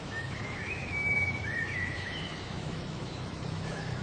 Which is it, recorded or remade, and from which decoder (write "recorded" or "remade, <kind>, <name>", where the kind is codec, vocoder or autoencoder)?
remade, autoencoder, DAC-VAE